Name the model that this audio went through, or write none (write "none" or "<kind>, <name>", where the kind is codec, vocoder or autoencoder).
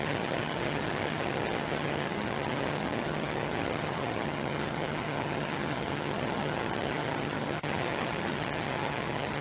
vocoder, HiFi-GAN